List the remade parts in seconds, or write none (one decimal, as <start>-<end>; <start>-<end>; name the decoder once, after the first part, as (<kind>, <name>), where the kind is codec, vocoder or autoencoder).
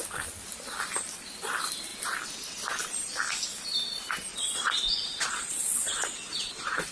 4.3-6.9 (vocoder, Vocos)